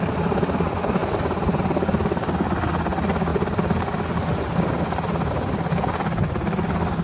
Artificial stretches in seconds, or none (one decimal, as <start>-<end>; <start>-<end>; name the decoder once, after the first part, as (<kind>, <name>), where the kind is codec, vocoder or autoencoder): none